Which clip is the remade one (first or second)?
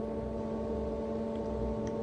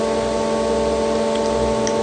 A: first